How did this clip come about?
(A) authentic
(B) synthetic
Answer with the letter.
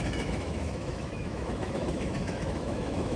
B